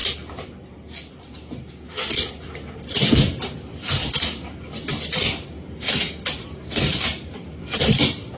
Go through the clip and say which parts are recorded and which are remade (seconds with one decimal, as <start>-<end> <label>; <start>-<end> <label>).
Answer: 0.0-8.4 recorded